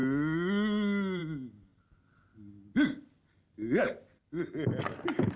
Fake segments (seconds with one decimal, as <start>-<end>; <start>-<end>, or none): none